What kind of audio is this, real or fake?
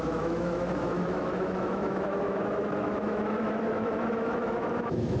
fake